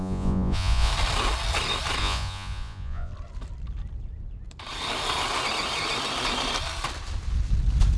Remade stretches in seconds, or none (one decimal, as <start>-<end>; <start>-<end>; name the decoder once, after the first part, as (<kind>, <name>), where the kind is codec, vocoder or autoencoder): 0.0-0.9 (vocoder, Vocos); 2.0-3.1

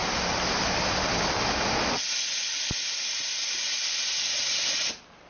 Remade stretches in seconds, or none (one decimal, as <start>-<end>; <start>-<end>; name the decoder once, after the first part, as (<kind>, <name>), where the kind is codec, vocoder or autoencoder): none

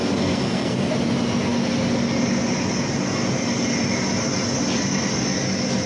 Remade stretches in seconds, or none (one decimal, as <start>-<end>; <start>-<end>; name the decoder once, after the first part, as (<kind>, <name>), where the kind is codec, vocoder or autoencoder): 0.0-0.9 (codec, SNAC)

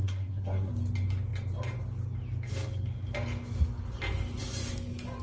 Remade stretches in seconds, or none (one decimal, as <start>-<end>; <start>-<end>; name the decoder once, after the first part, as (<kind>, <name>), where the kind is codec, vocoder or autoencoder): 0.0-0.7 (codec, SNAC)